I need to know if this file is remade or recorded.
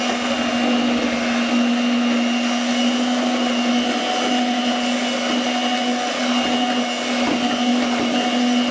recorded